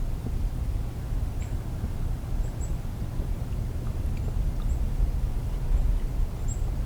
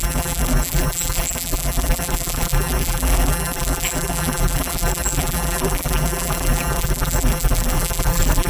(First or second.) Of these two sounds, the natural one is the first